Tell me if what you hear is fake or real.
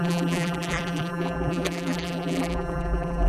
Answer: fake